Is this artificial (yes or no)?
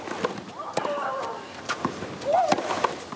no